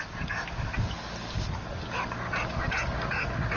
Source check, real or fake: real